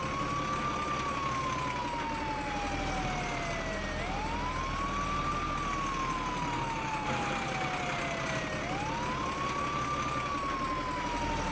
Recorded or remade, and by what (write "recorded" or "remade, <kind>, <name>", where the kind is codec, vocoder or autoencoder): recorded